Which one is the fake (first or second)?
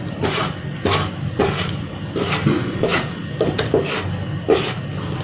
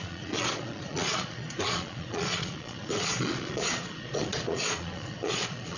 second